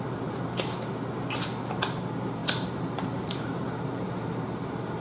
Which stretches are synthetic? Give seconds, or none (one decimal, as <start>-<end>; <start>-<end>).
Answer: 2.4-5.0